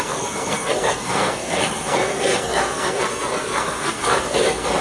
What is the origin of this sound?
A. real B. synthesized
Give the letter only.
B